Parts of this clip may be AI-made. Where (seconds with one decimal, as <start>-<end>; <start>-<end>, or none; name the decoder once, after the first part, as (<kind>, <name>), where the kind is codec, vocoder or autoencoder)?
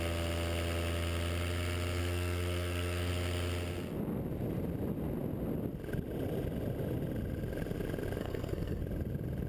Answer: 2.0-3.1 (codec, SNAC); 8.2-8.8